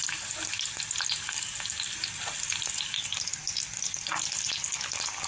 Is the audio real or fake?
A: real